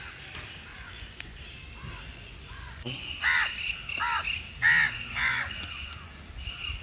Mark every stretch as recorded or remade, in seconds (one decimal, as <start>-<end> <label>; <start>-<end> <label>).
0.0-0.7 recorded; 0.7-1.4 remade; 1.4-2.1 recorded; 2.1-3.1 remade; 3.1-5.2 recorded; 5.2-6.2 remade; 6.2-6.8 recorded